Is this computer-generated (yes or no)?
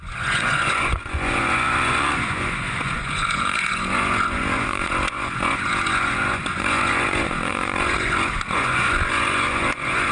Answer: yes